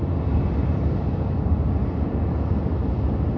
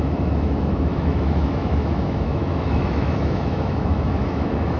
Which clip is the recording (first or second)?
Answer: first